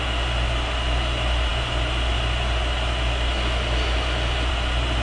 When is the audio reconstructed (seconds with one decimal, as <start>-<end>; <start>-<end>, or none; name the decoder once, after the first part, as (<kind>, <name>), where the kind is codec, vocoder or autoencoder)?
none